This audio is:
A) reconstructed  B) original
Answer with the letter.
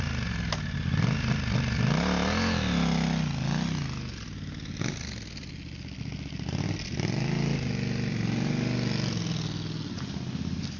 B